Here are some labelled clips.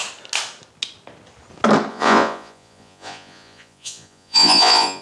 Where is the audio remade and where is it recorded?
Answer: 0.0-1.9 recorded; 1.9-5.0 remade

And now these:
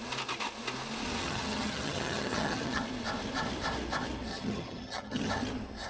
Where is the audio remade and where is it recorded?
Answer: 0.0-1.2 recorded; 1.2-2.8 remade; 2.8-4.3 recorded; 4.3-5.3 remade; 5.3-5.9 recorded

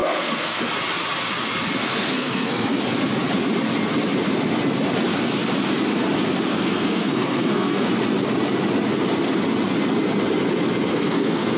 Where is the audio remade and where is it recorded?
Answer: 0.0-0.6 remade; 0.6-1.8 recorded; 1.8-2.8 remade; 2.8-6.5 recorded; 6.5-7.9 remade; 7.9-10.9 recorded; 10.9-11.6 remade